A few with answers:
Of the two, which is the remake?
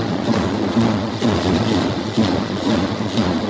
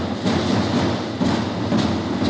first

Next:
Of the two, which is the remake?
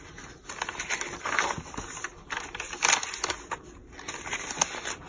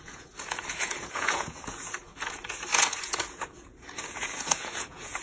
second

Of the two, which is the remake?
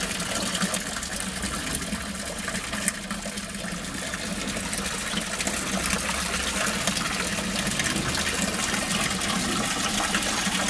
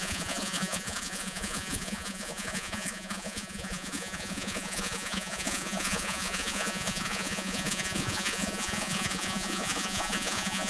second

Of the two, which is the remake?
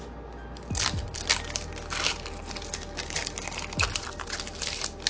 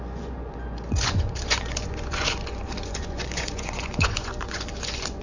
second